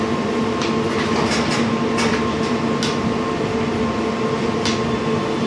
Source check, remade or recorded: recorded